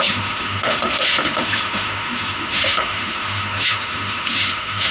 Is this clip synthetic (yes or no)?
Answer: yes